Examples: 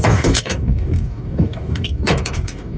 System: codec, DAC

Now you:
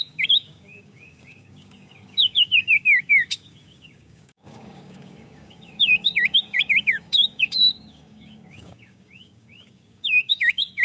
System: codec, DAC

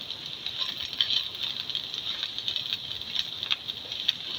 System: none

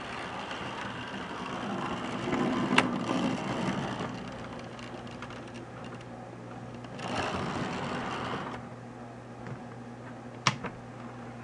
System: none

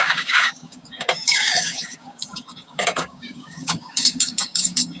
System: codec, DAC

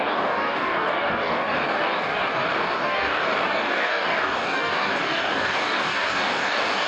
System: codec, DAC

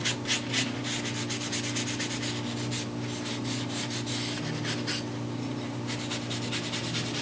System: none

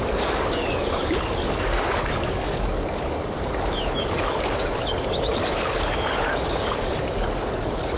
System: codec, DAC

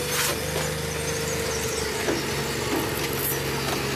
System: none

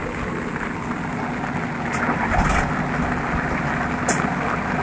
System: none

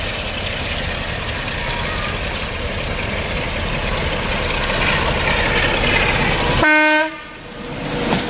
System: none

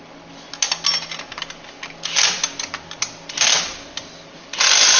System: none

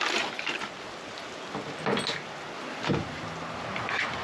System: none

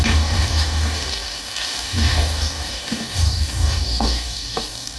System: codec, DAC